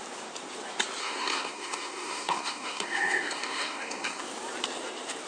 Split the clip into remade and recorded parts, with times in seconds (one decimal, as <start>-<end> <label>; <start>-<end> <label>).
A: 0.0-1.0 recorded; 1.0-4.2 remade; 4.2-5.3 recorded